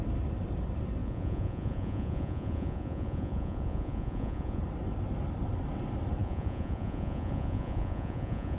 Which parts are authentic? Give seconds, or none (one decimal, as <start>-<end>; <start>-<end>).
0.0-1.0; 4.6-6.2